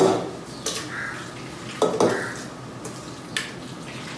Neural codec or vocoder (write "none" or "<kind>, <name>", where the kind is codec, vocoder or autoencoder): none